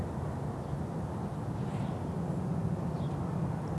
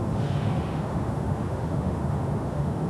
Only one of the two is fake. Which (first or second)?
second